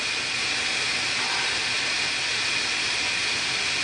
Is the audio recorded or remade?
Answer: recorded